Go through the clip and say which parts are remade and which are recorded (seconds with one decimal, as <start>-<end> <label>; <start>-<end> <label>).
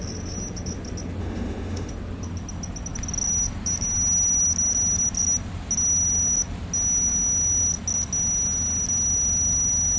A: 0.0-1.2 recorded; 1.2-1.9 remade; 1.9-10.0 recorded